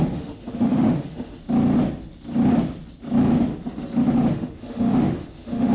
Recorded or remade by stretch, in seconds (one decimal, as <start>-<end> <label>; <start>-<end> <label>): 0.0-1.4 remade; 1.4-4.3 recorded; 4.3-5.7 remade